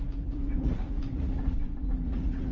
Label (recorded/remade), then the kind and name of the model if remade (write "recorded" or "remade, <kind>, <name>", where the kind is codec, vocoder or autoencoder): remade, vocoder, Vocos